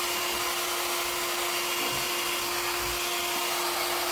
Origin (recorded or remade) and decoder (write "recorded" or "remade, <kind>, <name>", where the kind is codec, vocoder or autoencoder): recorded